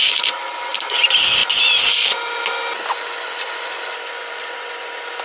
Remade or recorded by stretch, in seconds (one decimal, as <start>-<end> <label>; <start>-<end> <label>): 0.0-5.2 recorded